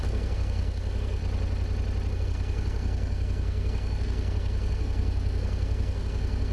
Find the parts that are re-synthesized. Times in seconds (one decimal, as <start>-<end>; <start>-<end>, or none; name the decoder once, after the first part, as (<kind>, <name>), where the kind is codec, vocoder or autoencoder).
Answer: 0.0-1.2 (codec, SNAC); 2.1-6.5

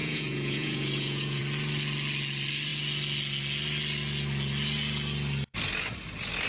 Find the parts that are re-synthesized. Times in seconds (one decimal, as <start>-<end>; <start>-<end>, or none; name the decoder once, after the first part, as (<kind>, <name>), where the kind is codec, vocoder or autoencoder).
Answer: 0.0-1.4 (vocoder, Vocos)

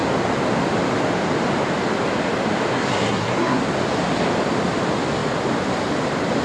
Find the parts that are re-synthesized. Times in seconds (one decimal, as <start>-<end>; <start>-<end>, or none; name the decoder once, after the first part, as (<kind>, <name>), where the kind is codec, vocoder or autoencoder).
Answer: 2.7-3.6 (codec, SNAC)

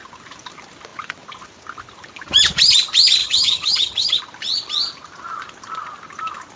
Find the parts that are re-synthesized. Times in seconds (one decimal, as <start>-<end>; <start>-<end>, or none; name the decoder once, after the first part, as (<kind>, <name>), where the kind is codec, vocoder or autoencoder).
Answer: 3.2-4.2 (vocoder, HiFi-GAN)